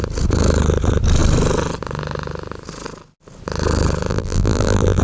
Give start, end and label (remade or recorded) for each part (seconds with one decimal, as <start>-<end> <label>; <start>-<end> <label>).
0.0-4.1 recorded; 4.1-5.0 remade